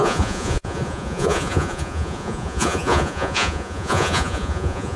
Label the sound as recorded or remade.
remade